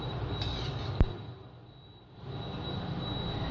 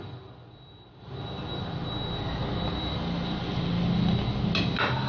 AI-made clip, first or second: first